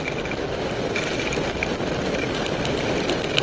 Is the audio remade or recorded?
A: recorded